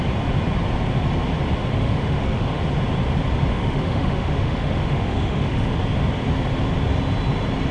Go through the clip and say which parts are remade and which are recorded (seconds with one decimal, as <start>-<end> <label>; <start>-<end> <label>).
0.0-1.7 recorded; 1.7-2.6 remade; 2.6-3.5 recorded; 3.5-5.8 remade; 5.8-7.7 recorded